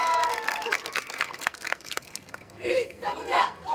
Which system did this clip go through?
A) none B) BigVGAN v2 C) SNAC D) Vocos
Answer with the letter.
C